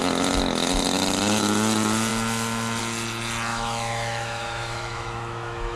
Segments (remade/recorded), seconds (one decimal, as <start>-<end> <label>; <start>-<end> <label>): 0.0-3.5 recorded; 3.5-5.8 remade